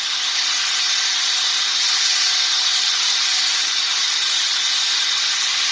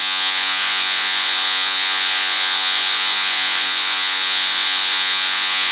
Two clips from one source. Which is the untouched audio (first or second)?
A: first